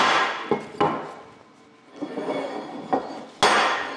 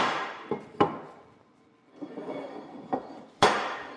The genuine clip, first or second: first